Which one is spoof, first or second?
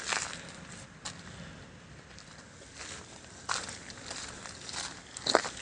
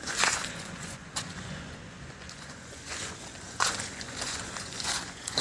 second